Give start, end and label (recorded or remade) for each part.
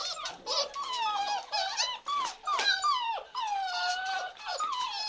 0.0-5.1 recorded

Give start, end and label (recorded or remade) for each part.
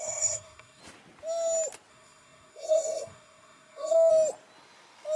0.0-0.8 remade; 0.8-1.9 recorded; 1.9-4.1 remade; 4.1-5.2 recorded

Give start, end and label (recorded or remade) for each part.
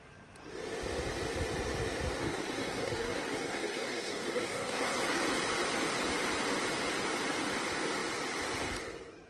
0.0-2.2 recorded; 2.2-5.2 remade; 5.2-9.3 recorded